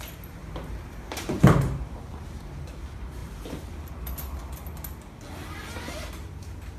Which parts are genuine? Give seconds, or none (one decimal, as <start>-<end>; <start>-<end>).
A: 0.0-0.4; 1.5-6.8